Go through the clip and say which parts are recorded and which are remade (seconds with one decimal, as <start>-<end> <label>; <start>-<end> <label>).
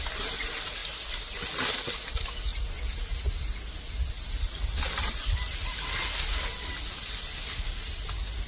0.0-8.5 recorded